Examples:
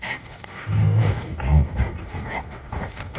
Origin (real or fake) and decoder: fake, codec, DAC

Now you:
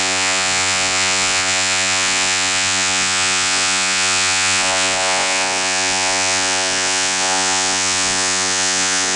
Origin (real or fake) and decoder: fake, vocoder, Vocos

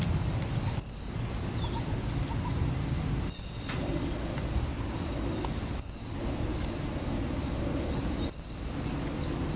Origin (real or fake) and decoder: real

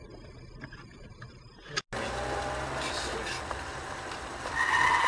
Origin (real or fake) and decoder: real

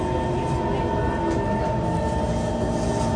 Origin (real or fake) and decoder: real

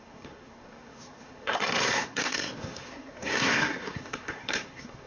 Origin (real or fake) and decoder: fake, codec, SNAC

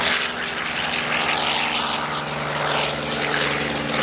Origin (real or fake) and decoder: real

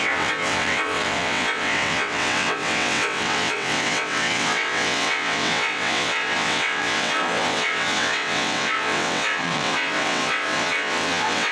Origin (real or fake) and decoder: fake, vocoder, WaveNeXt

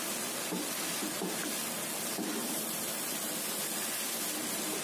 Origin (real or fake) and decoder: real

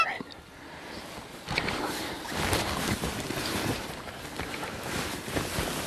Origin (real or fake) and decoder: real